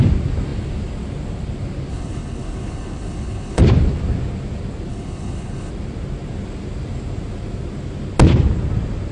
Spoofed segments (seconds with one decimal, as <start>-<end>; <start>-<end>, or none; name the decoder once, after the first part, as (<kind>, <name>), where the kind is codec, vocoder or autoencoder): 1.9-3.6 (codec, HILCodec); 4.9-5.7